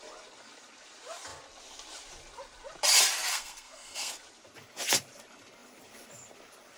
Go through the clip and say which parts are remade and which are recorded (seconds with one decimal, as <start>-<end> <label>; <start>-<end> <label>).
0.0-3.3 recorded; 3.3-4.1 remade; 4.1-6.8 recorded